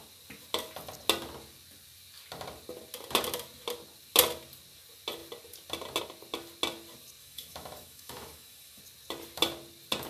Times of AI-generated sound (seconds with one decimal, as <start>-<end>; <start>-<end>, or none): 7.2-8.8